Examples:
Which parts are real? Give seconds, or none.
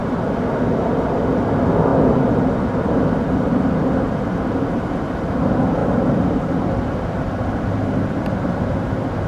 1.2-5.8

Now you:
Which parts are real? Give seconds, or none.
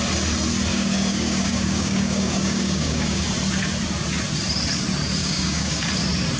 0.0-0.7; 3.3-5.2; 5.8-6.4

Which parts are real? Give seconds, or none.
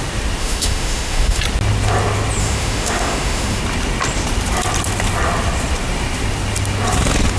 0.0-0.4; 1.4-2.4; 3.6-7.4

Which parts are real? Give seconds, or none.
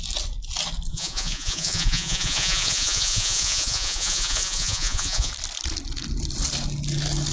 0.0-0.9; 5.3-7.3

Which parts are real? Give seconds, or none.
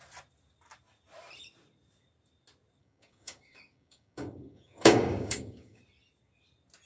0.0-2.8; 5.8-6.9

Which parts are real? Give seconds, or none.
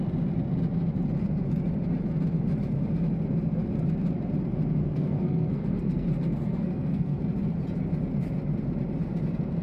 0.0-4.8; 7.2-9.6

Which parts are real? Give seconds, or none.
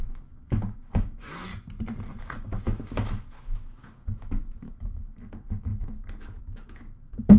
1.5-2.2